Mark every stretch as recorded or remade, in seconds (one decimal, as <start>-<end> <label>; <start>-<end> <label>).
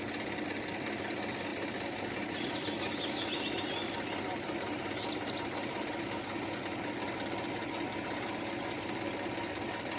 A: 0.0-10.0 recorded